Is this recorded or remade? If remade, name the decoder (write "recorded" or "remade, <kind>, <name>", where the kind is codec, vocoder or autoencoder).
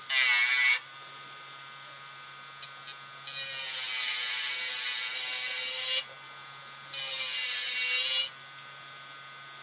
recorded